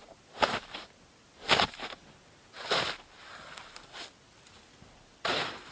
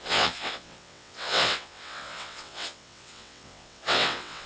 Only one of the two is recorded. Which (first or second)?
first